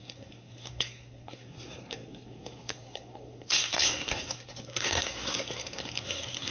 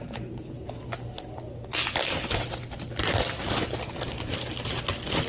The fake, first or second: first